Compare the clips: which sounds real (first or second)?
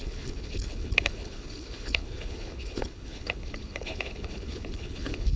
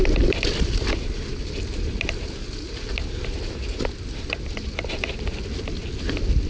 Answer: second